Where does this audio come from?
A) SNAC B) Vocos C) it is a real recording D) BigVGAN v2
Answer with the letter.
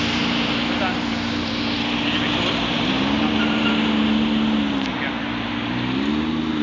C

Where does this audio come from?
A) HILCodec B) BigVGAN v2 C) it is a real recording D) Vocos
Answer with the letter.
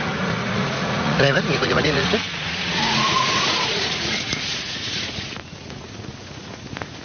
D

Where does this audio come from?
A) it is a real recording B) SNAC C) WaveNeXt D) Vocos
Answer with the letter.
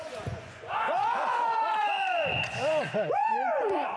D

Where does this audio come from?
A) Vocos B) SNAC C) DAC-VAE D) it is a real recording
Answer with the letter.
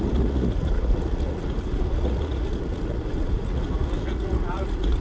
A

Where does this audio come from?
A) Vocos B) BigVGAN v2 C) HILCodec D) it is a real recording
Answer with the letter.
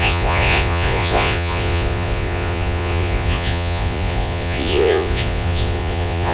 A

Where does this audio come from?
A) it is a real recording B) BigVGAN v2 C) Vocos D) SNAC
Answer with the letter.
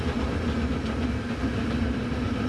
A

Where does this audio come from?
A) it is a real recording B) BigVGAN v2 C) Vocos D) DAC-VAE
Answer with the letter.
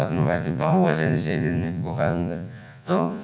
C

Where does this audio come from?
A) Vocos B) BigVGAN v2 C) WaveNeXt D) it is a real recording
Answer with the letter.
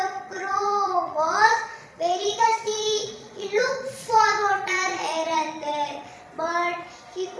A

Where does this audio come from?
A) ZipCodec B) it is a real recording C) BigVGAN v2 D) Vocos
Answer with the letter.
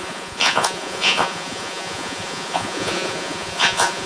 D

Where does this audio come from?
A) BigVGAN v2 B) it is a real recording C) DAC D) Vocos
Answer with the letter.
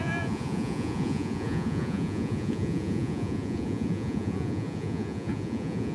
D